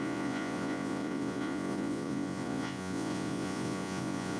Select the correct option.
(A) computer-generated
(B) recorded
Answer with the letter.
A